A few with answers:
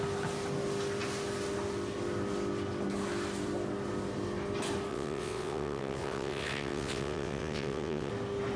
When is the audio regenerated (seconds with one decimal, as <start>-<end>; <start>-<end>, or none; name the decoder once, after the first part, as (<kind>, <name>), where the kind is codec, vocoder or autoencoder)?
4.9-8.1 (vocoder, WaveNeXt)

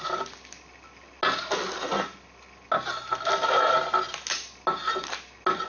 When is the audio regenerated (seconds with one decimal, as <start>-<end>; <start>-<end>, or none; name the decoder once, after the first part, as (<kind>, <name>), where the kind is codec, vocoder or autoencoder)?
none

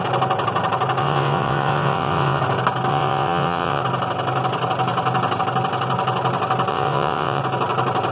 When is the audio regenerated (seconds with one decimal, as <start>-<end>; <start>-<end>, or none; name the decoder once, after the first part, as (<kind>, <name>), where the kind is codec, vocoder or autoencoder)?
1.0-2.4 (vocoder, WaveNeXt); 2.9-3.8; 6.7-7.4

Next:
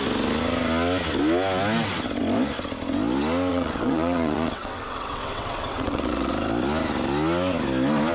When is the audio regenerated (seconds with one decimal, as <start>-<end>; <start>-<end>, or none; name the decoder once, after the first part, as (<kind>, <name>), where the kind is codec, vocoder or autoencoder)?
3.5-6.3 (vocoder, WaveNeXt)

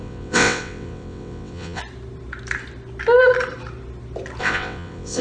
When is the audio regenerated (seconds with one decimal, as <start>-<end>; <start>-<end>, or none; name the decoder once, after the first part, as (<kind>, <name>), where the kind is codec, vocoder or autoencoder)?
0.0-1.8 (vocoder, WaveNeXt); 4.4-5.2

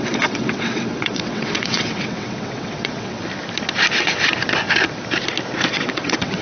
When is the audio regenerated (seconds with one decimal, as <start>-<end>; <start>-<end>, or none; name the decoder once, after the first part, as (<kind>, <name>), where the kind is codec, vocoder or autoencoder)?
0.0-3.2 (vocoder, WaveNeXt); 5.7-6.4

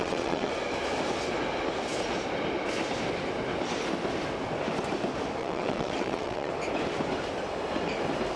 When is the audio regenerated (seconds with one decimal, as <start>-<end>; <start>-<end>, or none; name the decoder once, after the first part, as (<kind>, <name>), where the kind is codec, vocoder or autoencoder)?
0.0-0.5 (vocoder, WaveNeXt); 5.4-6.5